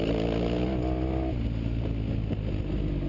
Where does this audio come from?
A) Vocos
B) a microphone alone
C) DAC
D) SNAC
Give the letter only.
B